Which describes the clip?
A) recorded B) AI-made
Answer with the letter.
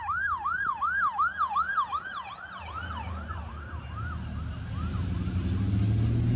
A